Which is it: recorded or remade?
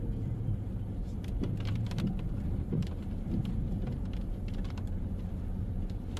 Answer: remade